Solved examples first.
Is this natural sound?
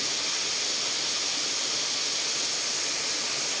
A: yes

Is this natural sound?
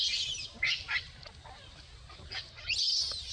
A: yes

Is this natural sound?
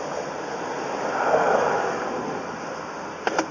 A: yes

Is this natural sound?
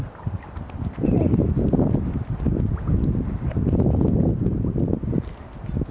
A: yes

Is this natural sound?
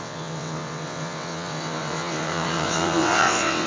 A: no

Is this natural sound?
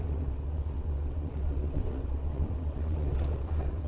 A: no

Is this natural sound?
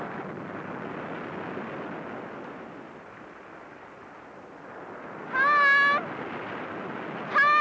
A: yes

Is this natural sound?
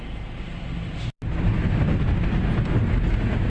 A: yes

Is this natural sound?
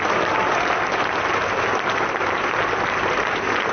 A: yes